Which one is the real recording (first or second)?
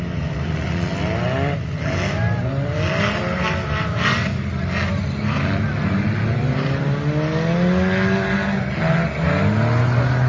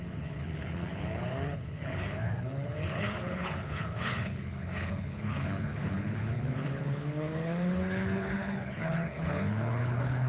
first